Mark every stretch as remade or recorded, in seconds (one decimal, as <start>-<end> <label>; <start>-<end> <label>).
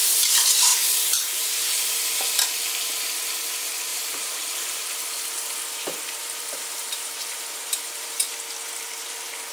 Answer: 0.0-0.7 recorded; 0.7-1.8 remade; 1.8-3.9 recorded; 3.9-4.9 remade; 4.9-6.2 recorded; 6.2-8.2 remade; 8.2-9.5 recorded